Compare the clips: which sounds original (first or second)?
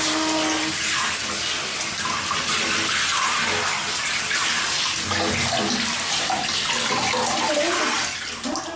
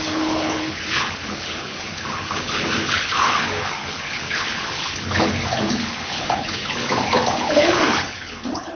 first